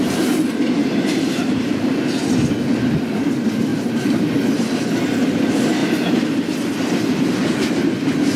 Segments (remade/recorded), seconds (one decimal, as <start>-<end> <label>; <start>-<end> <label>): 0.0-0.8 recorded; 0.8-1.8 remade; 1.8-3.7 recorded; 3.7-4.2 remade; 4.2-5.8 recorded; 5.8-7.7 remade; 7.7-8.4 recorded